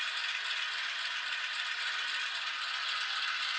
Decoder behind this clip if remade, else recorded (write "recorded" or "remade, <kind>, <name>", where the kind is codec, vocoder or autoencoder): recorded